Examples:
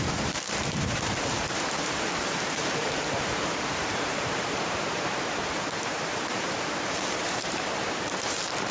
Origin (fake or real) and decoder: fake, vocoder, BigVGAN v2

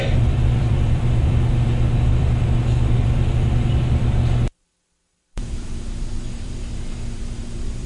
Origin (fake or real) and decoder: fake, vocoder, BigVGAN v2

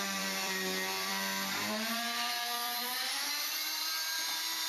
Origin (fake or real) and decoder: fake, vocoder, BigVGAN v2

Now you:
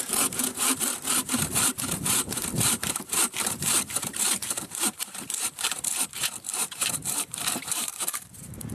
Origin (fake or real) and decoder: fake, vocoder, BigVGAN v2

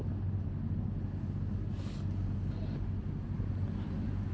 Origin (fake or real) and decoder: real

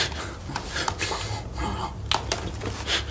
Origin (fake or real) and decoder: real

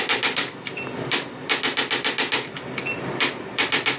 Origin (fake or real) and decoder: real